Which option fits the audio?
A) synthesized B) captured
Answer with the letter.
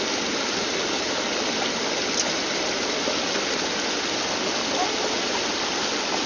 B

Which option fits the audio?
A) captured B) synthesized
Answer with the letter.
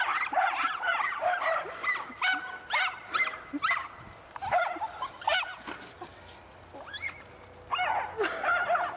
A